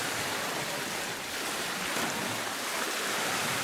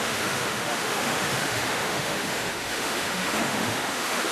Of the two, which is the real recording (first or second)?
first